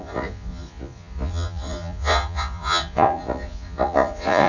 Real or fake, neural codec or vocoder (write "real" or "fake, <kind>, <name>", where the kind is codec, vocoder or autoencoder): fake, vocoder, Vocos